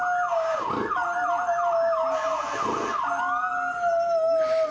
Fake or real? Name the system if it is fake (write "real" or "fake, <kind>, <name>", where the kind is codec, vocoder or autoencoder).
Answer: real